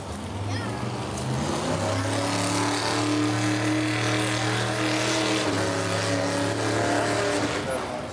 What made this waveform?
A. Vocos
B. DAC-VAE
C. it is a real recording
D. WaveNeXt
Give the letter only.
C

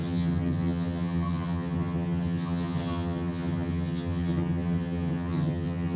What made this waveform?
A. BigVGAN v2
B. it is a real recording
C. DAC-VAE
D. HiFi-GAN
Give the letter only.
D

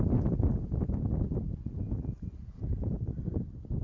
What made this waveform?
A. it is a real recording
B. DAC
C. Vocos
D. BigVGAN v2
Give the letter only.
A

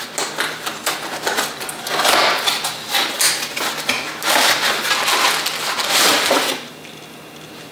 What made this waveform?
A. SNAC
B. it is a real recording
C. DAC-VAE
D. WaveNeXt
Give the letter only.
B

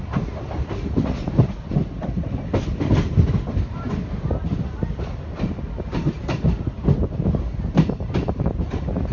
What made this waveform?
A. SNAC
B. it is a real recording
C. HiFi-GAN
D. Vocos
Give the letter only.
B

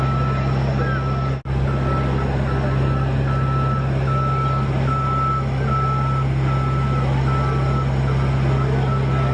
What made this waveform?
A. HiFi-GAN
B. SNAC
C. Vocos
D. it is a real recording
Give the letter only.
D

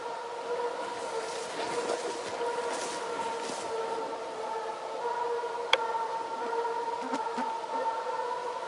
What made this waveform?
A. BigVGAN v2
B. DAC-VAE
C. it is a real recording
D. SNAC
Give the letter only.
C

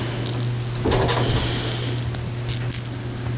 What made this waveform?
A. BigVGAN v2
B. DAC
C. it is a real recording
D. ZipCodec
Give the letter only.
C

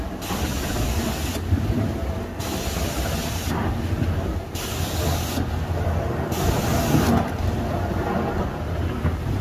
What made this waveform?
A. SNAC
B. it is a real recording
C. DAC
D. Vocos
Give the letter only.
B